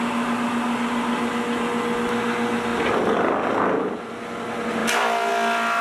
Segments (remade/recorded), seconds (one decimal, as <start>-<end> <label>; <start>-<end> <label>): 0.0-5.8 recorded